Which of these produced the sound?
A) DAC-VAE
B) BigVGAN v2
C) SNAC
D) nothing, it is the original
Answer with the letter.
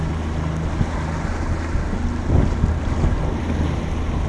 D